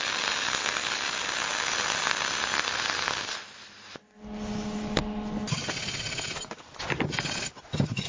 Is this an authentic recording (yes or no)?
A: yes